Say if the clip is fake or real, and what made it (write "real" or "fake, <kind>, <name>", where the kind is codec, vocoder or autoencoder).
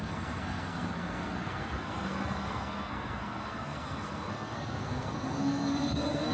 fake, codec, SNAC